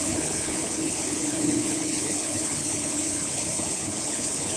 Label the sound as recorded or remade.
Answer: remade